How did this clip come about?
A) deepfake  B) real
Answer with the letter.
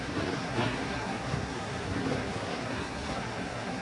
A